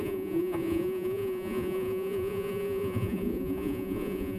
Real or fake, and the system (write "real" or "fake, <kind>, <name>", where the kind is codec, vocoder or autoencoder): fake, vocoder, Vocos